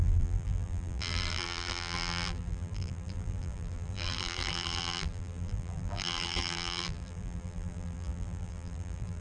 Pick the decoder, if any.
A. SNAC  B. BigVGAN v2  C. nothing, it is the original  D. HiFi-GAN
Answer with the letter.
B